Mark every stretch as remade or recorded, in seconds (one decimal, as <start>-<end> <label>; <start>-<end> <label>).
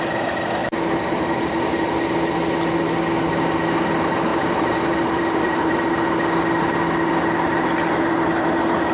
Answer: 0.0-0.6 recorded; 0.6-1.5 remade; 1.5-4.3 recorded; 4.3-5.9 remade; 5.9-8.9 recorded